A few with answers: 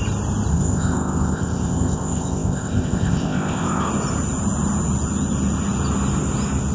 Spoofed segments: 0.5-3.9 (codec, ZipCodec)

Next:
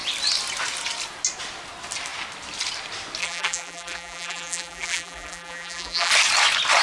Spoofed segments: 3.2-6.1 (vocoder, BigVGAN v2)

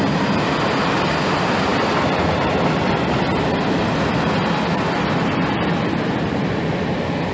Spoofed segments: none